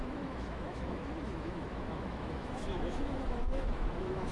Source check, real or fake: fake